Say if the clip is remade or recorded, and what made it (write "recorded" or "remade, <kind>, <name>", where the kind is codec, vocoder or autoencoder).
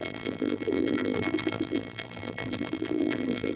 remade, vocoder, BigVGAN v2